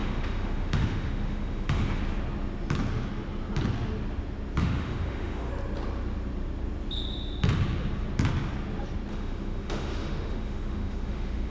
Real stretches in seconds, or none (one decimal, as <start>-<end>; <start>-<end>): 2.0-4.6; 5.5-9.1